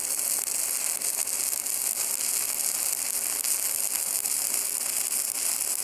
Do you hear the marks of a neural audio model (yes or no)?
no